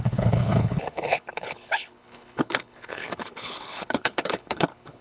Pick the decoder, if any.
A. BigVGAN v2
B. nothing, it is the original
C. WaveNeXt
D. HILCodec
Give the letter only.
D